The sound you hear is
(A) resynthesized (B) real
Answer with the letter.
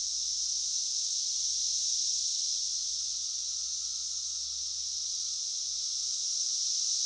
B